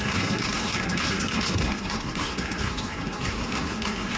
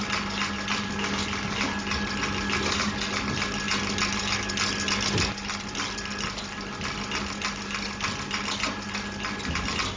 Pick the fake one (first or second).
first